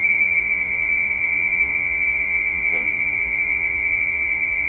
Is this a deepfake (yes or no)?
yes